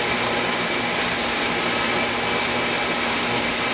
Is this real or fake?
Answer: real